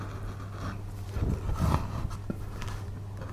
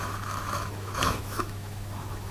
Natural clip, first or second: first